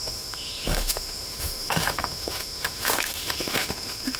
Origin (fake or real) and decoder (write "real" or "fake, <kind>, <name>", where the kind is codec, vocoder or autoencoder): fake, autoencoder, DAC-VAE